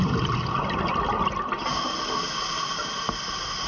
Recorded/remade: recorded